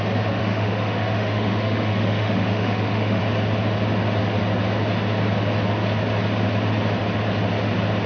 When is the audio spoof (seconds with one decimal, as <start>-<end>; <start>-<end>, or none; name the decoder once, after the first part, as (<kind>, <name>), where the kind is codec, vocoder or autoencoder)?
0.4-3.2 (autoencoder, DAC-VAE)